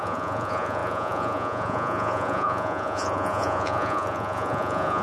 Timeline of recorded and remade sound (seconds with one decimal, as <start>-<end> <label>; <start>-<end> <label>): 0.0-5.0 remade